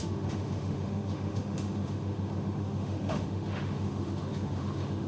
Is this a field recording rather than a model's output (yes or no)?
no